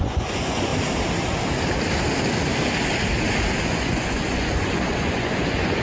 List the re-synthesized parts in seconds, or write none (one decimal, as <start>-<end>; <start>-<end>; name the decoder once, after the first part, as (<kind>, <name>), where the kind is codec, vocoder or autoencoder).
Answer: 0.0-0.7 (vocoder, Vocos); 3.6-5.8